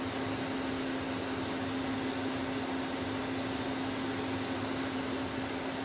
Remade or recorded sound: recorded